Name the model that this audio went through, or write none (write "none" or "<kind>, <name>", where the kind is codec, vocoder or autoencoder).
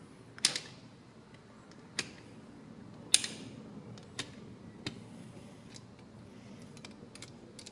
none